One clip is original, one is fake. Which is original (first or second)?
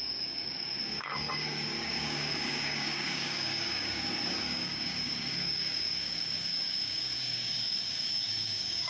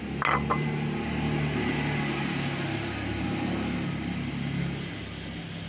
second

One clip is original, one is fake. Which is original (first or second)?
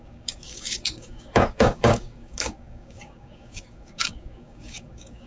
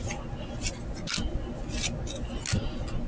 second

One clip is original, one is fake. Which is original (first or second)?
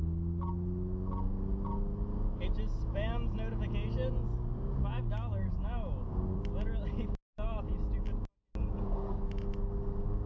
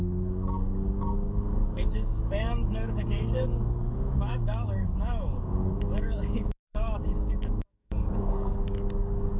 first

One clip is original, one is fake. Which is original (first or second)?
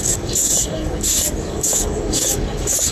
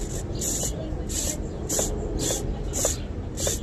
second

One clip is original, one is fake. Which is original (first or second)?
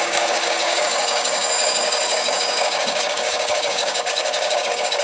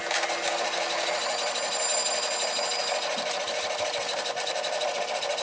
second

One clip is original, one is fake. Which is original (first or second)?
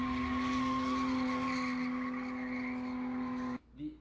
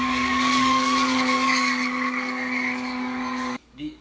first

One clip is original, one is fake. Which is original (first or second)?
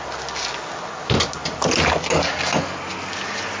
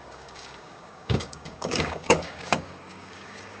first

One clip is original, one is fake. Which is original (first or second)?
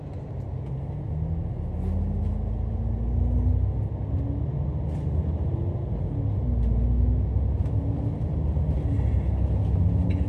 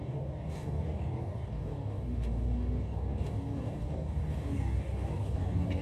first